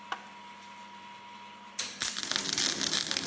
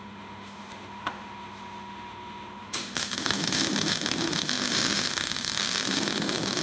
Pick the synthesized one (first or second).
second